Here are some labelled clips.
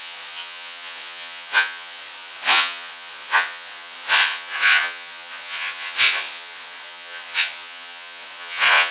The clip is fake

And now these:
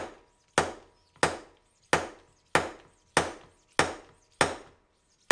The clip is real